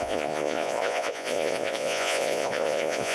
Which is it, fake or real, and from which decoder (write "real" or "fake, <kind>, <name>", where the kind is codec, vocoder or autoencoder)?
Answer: fake, vocoder, Vocos